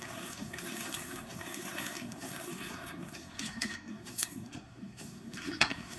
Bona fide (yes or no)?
no